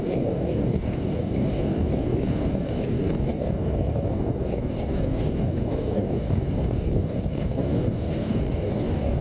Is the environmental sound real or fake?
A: fake